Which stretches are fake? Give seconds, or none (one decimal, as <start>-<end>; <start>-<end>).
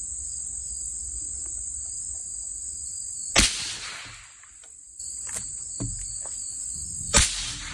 0.0-2.2; 6.6-7.7